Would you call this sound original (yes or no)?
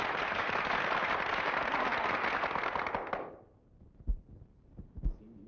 yes